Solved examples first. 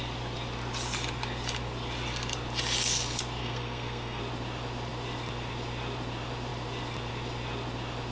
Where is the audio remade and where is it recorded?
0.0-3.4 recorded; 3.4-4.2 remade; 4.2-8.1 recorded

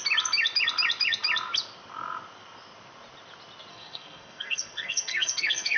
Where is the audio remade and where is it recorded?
0.0-3.7 recorded; 3.7-5.8 remade

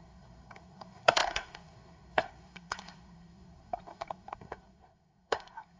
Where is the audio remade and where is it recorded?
0.0-5.8 remade

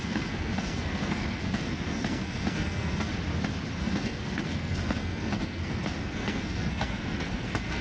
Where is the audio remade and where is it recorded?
0.0-3.1 remade; 3.1-3.8 recorded; 3.8-7.8 remade

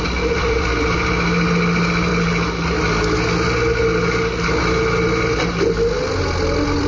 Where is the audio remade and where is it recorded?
0.0-6.9 recorded

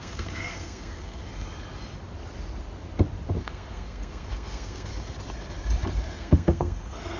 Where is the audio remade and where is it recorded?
0.0-1.2 remade; 1.2-3.4 recorded; 3.4-4.9 remade; 4.9-6.1 recorded; 6.1-7.2 remade

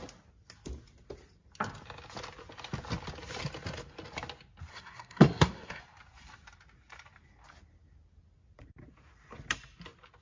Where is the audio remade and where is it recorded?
0.0-4.7 recorded; 4.7-5.8 remade; 5.8-10.2 recorded